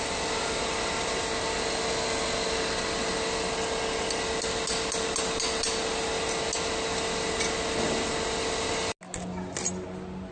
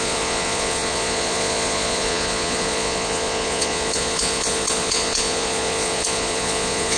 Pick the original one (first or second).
first